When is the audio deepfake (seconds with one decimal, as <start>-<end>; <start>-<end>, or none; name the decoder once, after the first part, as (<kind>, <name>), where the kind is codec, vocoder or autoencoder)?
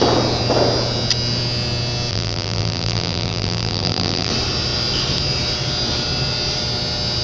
2.1-4.3 (vocoder, BigVGAN v2)